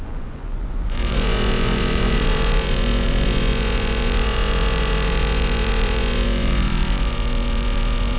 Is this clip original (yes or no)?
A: no